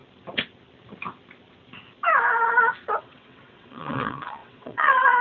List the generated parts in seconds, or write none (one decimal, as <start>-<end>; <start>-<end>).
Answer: 3.0-5.2